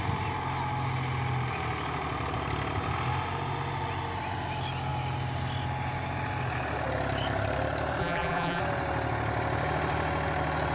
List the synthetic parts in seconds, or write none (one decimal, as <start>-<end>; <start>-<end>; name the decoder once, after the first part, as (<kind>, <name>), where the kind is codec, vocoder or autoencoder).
8.0-8.6 (vocoder, BigVGAN v2)